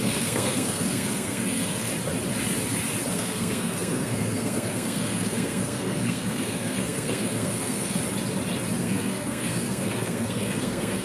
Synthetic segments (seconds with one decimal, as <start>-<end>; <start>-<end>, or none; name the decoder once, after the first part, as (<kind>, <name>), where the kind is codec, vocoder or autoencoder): 0.0-1.9 (codec, SNAC); 3.1-8.0; 8.8-11.0

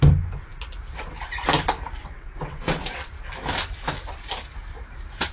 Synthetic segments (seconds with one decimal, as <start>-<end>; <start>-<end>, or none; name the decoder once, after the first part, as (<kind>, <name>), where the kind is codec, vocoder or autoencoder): 2.0-3.1 (vocoder, WaveNeXt)

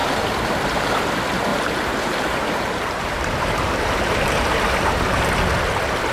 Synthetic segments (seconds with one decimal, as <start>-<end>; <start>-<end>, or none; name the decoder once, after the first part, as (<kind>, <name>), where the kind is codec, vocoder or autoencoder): 0.0-1.1 (vocoder, BigVGAN v2); 1.5-5.2

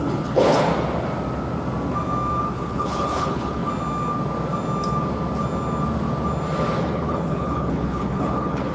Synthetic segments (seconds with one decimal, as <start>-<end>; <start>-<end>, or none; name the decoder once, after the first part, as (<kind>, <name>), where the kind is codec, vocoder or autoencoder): 0.0-0.7 (codec, HILCodec); 2.5-3.6; 6.8-8.7

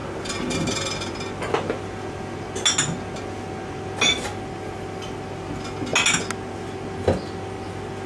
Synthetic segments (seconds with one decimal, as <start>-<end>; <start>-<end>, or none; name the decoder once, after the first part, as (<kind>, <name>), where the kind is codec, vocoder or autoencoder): none

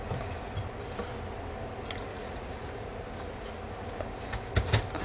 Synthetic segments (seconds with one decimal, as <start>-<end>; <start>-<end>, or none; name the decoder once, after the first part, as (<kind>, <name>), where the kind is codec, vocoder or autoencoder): 2.1-2.7 (vocoder, Vocos)

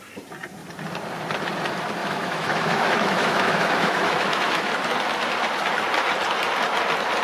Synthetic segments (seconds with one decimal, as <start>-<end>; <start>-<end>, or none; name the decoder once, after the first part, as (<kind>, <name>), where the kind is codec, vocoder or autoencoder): 2.0-4.7 (autoencoder, DAC-VAE)

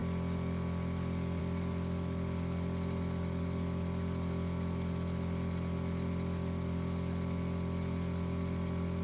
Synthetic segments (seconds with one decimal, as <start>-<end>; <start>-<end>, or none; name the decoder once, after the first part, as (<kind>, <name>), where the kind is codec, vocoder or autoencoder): none